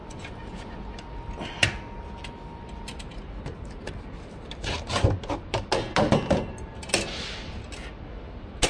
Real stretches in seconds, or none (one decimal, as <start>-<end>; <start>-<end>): 0.8-8.7